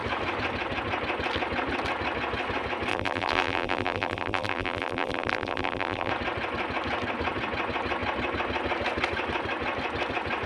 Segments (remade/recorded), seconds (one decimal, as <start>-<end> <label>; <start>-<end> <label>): 0.0-2.9 recorded; 2.9-6.1 remade; 6.1-10.5 recorded